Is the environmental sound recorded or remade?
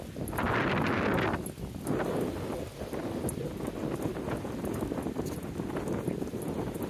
recorded